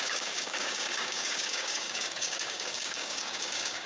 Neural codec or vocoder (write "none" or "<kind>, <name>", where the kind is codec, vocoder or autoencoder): codec, DAC